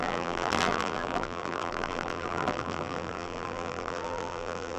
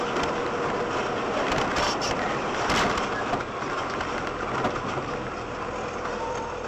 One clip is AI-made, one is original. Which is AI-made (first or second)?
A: first